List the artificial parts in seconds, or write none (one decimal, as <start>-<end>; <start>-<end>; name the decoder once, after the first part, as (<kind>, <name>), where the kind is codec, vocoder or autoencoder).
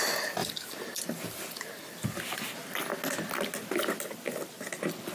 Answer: none